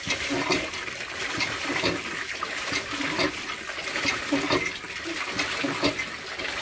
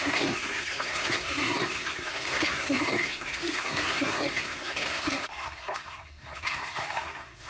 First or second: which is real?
first